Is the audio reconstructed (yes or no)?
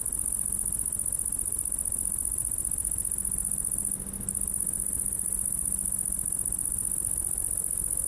no